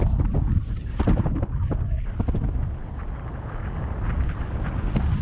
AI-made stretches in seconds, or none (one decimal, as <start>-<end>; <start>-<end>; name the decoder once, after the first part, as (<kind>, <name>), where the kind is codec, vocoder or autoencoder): none